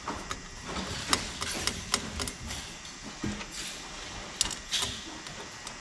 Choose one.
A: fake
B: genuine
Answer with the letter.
B